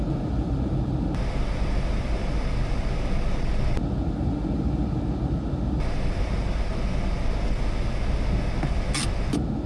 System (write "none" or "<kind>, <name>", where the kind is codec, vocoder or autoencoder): none